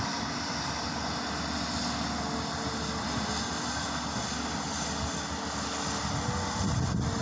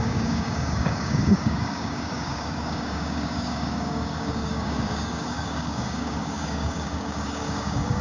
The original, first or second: first